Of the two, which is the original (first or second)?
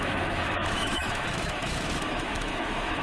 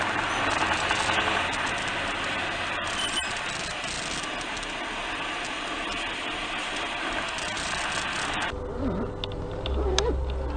second